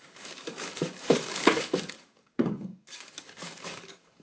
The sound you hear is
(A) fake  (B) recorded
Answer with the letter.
A